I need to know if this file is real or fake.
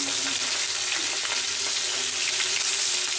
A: real